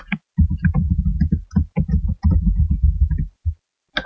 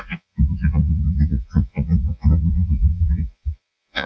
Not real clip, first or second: second